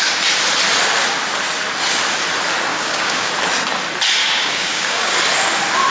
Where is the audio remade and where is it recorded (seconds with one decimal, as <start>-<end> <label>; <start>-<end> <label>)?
0.0-2.7 recorded; 2.7-3.3 remade; 3.3-4.2 recorded; 4.2-5.1 remade; 5.1-5.9 recorded